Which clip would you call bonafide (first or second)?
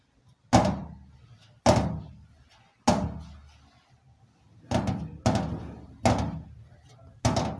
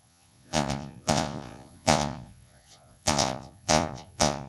first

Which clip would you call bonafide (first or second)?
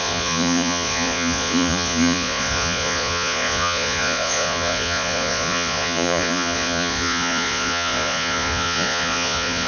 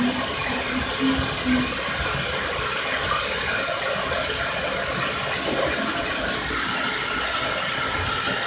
second